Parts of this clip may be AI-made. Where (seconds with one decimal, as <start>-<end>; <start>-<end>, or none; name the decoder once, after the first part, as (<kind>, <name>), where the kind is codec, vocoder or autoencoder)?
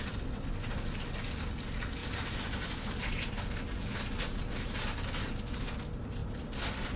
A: none